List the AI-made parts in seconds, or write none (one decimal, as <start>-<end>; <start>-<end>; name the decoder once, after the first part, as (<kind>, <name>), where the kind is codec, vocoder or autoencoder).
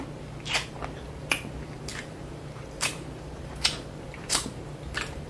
1.9-5.3 (vocoder, BigVGAN v2)